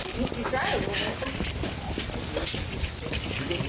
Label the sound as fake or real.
real